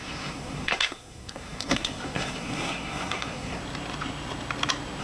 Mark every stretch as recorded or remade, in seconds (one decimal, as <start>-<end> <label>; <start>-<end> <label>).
0.0-3.6 remade; 3.6-5.0 recorded